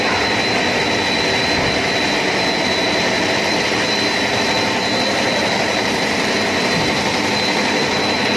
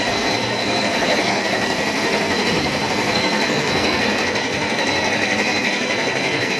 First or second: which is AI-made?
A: second